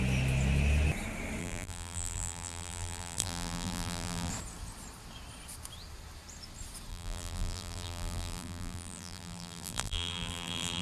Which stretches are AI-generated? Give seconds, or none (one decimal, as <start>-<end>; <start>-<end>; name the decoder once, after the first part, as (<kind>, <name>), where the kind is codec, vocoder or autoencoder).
1.4-4.3 (vocoder, BigVGAN v2); 6.9-10.8

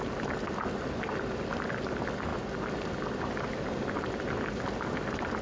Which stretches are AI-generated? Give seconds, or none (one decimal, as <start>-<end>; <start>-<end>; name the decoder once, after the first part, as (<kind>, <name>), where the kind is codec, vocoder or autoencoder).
none

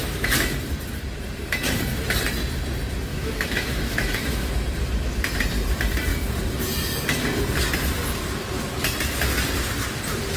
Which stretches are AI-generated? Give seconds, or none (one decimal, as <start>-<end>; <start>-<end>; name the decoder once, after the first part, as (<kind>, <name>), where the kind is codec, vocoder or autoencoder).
3.1-4.5 (autoencoder, DAC-VAE)

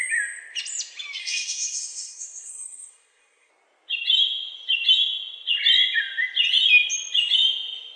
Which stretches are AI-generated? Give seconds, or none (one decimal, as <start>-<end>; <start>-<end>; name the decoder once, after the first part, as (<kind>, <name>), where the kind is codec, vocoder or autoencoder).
1.2-3.5 (codec, SNAC)

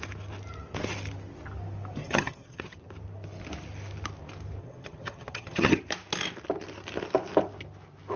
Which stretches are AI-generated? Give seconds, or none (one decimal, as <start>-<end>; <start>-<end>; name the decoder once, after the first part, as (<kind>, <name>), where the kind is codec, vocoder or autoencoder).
2.0-2.9 (vocoder, HiFi-GAN); 4.6-5.8

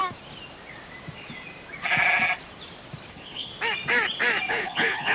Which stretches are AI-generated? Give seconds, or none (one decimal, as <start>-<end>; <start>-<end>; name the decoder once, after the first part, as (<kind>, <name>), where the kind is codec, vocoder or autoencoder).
3.1-3.5 (codec, HILCodec); 4.5-5.1